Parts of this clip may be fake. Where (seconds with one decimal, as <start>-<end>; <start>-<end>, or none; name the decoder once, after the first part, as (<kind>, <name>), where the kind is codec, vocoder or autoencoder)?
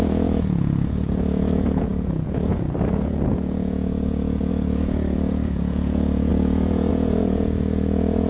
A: 0.0-8.3 (vocoder, Vocos)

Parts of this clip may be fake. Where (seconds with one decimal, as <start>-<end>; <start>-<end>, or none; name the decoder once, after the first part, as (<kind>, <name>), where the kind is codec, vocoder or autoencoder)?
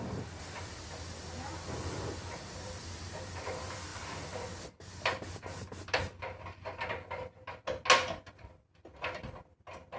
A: none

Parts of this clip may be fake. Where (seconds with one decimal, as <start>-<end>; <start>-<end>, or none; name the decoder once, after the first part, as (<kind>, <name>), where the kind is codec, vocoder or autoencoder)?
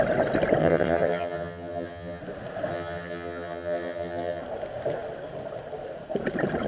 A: 0.6-2.2 (vocoder, HiFi-GAN); 2.7-4.4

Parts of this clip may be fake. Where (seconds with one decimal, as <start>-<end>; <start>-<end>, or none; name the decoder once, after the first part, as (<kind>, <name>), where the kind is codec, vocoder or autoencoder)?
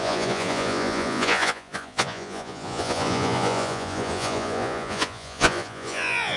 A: 0.0-6.4 (vocoder, Vocos)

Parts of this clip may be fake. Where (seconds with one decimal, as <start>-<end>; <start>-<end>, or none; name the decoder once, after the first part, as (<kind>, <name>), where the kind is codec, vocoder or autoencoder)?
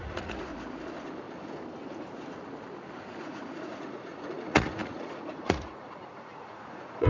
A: 0.0-0.5 (vocoder, Vocos); 3.2-7.1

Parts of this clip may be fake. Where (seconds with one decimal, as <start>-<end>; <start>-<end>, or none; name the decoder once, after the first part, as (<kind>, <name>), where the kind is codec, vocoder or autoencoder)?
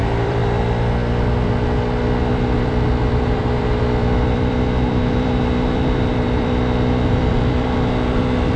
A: 0.0-0.4 (vocoder, BigVGAN v2); 2.3-8.6